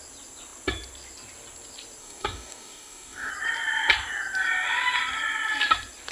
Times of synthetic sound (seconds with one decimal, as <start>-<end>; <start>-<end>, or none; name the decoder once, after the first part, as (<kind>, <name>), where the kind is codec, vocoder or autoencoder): 2.0-3.3 (codec, DAC)